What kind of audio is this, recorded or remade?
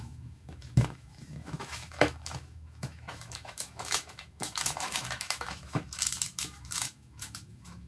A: remade